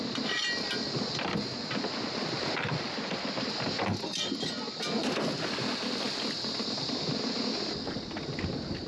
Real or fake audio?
real